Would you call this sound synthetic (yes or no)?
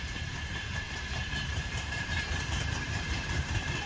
yes